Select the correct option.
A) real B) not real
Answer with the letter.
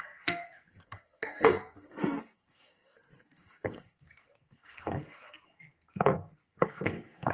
B